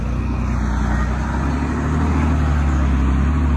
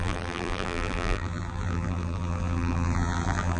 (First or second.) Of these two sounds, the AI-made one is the second